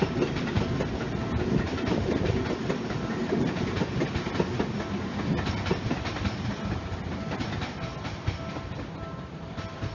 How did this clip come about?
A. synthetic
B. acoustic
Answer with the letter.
B